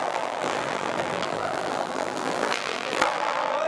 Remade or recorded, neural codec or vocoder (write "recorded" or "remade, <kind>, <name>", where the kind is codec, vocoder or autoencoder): remade, vocoder, BigVGAN v2